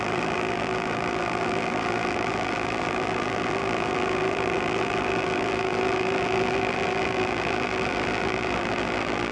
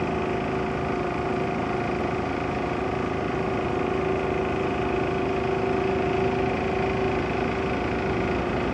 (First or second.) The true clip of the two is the second